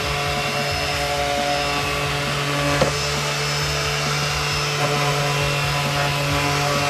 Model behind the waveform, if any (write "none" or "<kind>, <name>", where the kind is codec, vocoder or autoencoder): none